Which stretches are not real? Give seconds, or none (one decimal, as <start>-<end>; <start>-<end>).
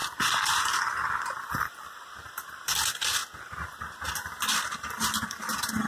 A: 0.0-3.2; 4.1-5.9